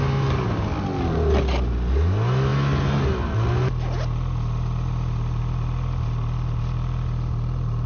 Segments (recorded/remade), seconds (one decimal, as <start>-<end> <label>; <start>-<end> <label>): 0.0-7.9 recorded